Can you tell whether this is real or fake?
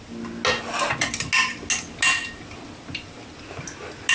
real